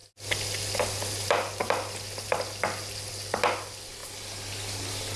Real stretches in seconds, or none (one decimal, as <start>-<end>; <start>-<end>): 0.0-5.2

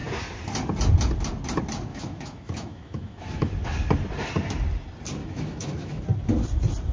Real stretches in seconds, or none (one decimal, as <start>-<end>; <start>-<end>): 0.0-1.9; 3.5-5.2; 6.0-6.9

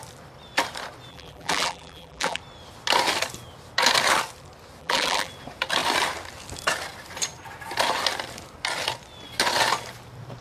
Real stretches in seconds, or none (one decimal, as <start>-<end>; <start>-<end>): 0.0-1.1; 2.4-4.8; 5.3-10.4

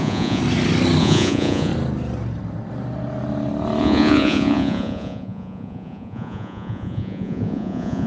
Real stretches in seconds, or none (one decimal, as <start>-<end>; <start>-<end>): 0.4-1.0; 1.7-3.8

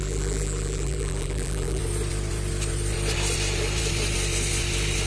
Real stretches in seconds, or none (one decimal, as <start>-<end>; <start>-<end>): 1.8-5.1

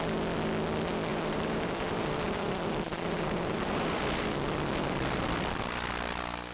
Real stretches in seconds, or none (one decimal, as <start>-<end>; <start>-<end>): 0.0-1.1; 4.0-6.5